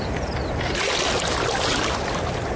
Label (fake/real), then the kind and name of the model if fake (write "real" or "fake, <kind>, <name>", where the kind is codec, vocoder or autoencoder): real